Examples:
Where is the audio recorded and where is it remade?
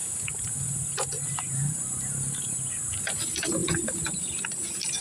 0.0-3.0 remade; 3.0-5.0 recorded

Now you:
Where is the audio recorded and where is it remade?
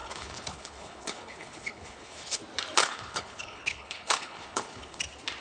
0.0-2.4 remade; 2.4-2.8 recorded; 2.8-5.0 remade; 5.0-5.4 recorded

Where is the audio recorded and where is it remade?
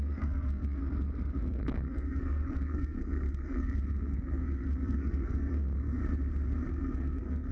0.0-0.8 remade; 0.8-1.4 recorded; 1.4-6.0 remade; 6.0-6.7 recorded; 6.7-7.5 remade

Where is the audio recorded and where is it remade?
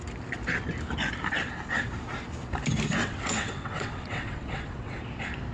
0.0-3.0 recorded; 3.0-5.0 remade; 5.0-5.5 recorded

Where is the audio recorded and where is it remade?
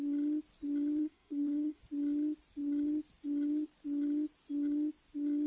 0.0-1.0 recorded; 1.0-1.8 remade; 1.8-5.5 recorded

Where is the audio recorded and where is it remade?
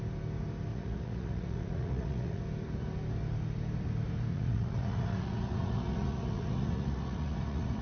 0.0-0.7 recorded; 0.7-2.4 remade; 2.4-4.3 recorded; 4.3-7.8 remade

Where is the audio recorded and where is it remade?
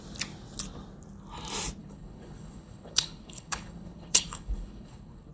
0.0-1.8 recorded; 1.8-5.3 remade